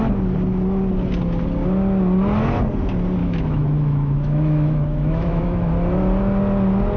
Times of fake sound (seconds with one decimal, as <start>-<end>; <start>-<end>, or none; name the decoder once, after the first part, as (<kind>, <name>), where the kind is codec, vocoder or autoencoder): 3.2-5.7 (autoencoder, DAC-VAE)